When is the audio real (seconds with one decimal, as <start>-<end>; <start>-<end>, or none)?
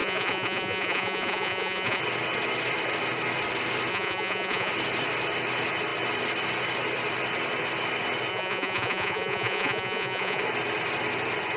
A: 2.0-3.9; 4.7-8.3; 10.4-11.6